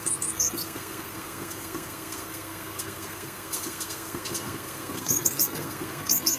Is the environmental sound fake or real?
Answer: fake